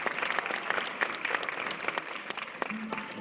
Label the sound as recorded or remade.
recorded